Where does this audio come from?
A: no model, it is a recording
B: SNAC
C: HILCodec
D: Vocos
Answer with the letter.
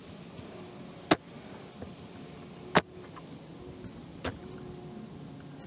A